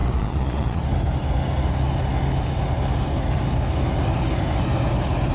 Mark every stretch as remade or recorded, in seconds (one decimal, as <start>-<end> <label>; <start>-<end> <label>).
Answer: 0.0-0.8 remade; 0.8-5.3 recorded